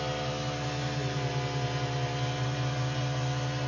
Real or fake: real